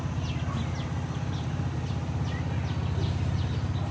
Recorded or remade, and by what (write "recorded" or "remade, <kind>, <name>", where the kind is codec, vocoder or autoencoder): recorded